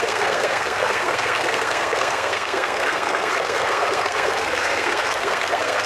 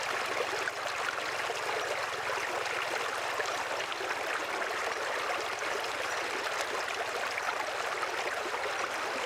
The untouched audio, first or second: second